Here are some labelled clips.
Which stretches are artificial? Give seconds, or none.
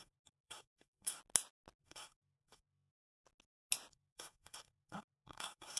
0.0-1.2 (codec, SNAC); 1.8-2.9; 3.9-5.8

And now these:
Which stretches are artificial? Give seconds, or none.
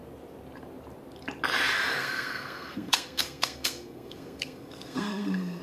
2.0-5.6 (codec, SNAC)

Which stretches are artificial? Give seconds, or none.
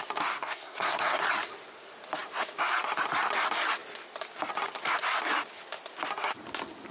0.4-1.2 (codec, SNAC)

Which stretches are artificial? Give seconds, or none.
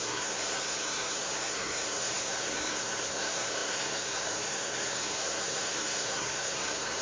0.0-7.0 (codec, SNAC)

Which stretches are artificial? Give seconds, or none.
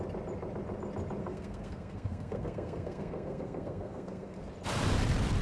1.2-4.4 (codec, SNAC)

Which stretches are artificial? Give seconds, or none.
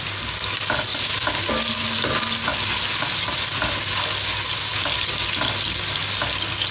none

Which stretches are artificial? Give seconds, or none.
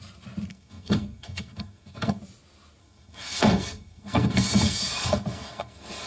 0.5-2.2 (codec, SNAC); 2.8-6.1